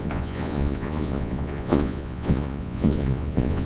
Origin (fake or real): fake